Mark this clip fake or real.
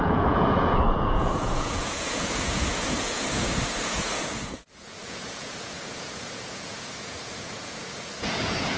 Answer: fake